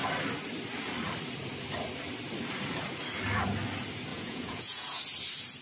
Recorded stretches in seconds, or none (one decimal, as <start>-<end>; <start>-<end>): 0.0-4.1; 5.0-5.6